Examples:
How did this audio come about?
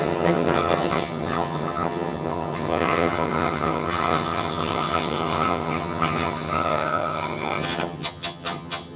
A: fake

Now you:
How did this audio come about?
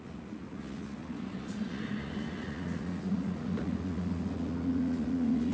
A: fake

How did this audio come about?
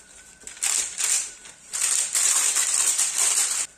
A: fake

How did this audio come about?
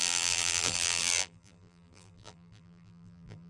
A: fake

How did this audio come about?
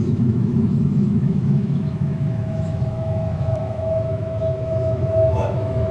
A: fake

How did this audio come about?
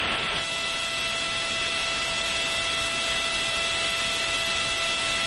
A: real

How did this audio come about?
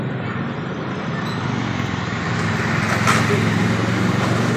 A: real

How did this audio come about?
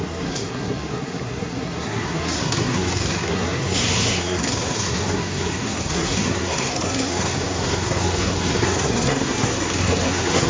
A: fake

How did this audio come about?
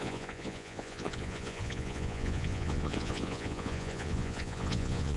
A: fake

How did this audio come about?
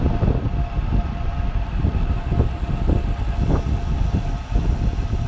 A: real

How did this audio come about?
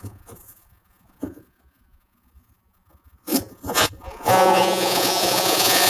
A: fake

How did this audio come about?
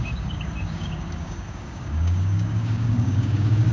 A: fake